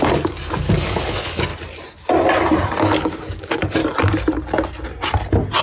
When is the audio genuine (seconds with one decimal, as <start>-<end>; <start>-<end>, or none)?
1.5-2.8; 3.8-5.6